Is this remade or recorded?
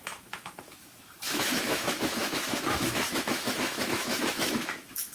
remade